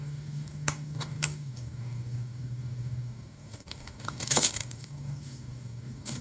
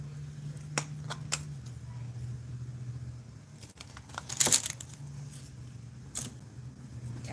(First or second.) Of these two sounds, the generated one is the first